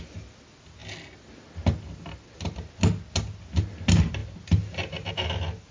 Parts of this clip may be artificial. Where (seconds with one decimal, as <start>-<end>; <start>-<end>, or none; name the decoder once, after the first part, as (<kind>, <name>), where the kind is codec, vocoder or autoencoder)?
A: none